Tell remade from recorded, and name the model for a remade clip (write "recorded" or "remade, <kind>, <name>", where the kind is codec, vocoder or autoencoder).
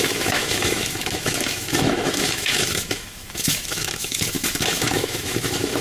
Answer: remade, autoencoder, DAC-VAE